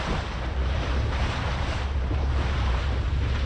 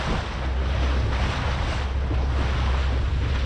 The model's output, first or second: first